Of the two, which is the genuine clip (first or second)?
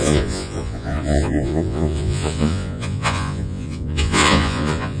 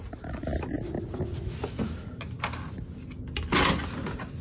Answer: second